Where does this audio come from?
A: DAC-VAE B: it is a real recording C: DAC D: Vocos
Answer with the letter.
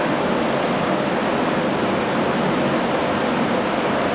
B